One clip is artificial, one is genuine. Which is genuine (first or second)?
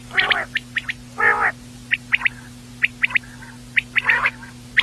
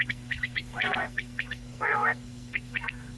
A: first